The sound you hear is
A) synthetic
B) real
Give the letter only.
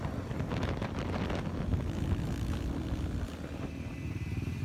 B